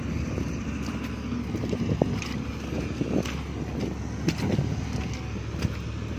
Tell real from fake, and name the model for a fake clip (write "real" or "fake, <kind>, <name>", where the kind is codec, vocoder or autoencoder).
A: real